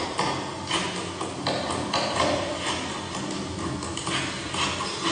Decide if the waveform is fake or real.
real